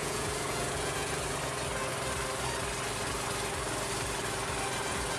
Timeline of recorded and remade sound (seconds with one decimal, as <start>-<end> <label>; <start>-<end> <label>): 0.0-1.1 remade; 1.1-5.2 recorded